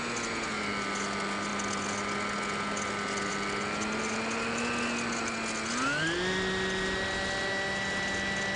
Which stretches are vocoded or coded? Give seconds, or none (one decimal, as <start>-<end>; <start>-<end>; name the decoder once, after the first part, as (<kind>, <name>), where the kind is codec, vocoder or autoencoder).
none